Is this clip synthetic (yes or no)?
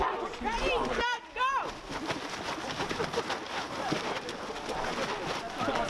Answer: no